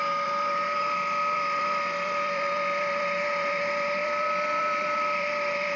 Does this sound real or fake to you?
fake